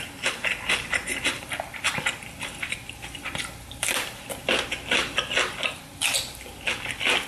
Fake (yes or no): no